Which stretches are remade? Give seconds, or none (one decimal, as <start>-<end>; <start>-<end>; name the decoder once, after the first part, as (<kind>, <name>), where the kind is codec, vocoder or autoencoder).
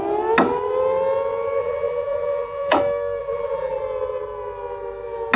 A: 1.6-2.8 (vocoder, BigVGAN v2); 3.2-3.8